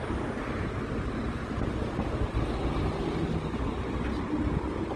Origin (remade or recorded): recorded